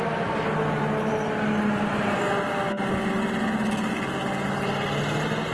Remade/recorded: recorded